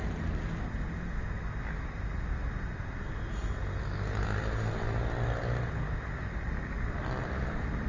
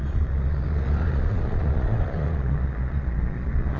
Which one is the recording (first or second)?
first